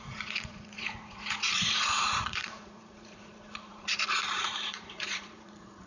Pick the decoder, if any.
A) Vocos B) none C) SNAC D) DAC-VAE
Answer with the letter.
A